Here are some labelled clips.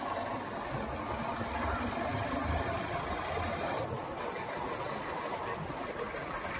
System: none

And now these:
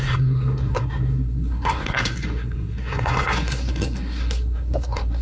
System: codec, SNAC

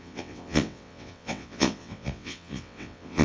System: vocoder, WaveNeXt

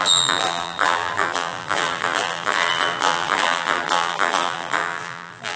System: vocoder, BigVGAN v2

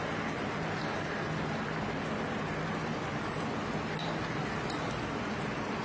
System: none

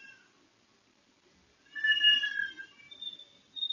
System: none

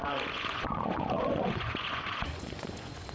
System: vocoder, Vocos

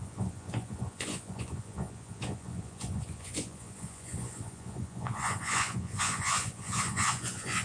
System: vocoder, Vocos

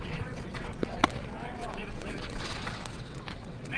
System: vocoder, WaveNeXt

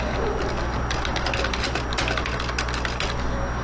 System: none